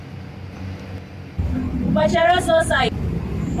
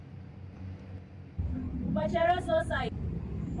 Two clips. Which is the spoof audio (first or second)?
second